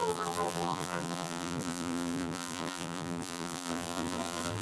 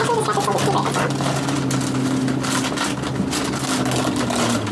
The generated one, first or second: first